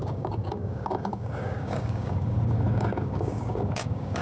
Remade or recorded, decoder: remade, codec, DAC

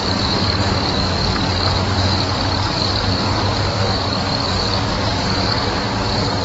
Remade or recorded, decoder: remade, codec, DAC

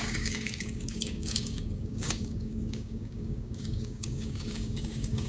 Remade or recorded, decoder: remade, codec, DAC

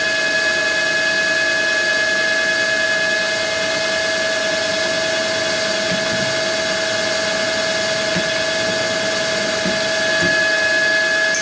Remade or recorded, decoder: recorded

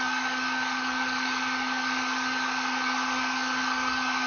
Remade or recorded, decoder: remade, codec, DAC